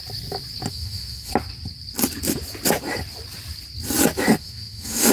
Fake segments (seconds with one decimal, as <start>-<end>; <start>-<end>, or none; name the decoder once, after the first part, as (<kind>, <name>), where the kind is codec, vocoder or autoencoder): 0.7-1.3 (autoencoder, DAC-VAE); 4.4-5.1